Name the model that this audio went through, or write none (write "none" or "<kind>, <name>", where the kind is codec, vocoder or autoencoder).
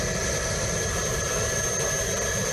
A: none